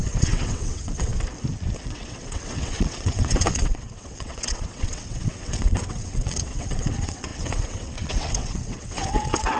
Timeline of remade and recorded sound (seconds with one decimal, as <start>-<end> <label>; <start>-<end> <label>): 0.0-1.1 remade; 1.1-1.8 recorded; 1.8-9.6 remade